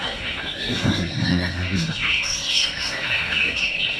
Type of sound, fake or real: fake